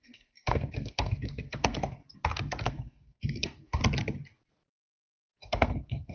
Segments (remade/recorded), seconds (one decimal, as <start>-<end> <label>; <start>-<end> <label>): 0.0-2.0 remade; 2.0-2.6 recorded; 2.6-3.8 remade; 3.8-4.9 recorded; 4.9-6.1 remade